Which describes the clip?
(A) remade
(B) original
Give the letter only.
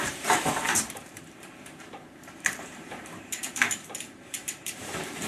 A